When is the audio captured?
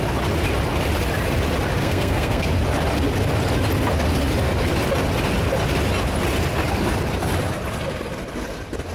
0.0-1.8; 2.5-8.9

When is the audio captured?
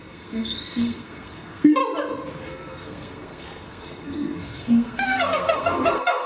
1.8-2.4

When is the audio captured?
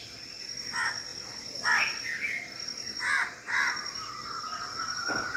0.0-5.4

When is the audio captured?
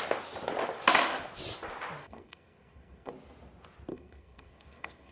0.0-2.0; 3.1-3.9